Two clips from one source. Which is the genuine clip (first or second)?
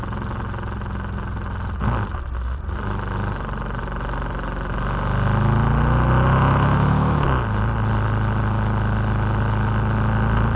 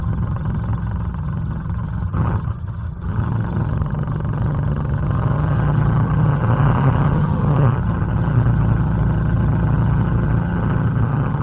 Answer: first